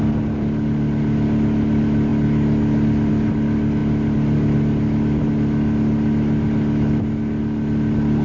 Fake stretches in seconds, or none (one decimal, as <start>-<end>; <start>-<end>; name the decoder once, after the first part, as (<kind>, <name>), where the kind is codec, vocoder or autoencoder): none